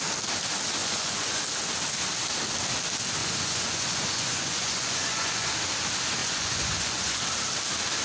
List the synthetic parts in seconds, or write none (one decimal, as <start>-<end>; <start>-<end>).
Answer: 0.8-1.4; 3.2-5.5; 6.2-7.2